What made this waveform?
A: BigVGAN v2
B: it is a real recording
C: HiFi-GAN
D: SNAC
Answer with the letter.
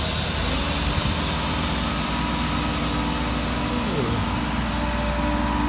B